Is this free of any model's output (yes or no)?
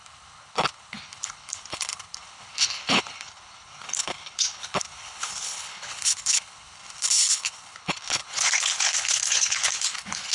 no